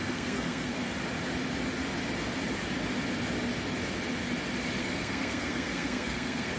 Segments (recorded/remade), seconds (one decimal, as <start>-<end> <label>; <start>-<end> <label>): 0.0-0.8 remade; 0.8-4.8 recorded; 4.8-6.6 remade